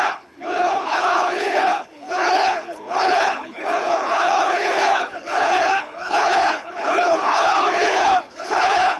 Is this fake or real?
fake